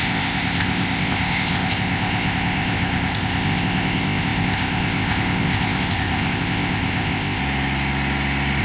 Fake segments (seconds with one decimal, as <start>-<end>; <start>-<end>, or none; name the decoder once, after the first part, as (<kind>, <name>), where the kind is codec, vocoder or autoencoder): 0.0-7.4 (codec, ZipCodec)